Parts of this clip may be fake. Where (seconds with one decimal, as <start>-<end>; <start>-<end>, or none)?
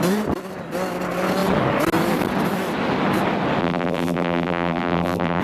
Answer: 3.6-5.4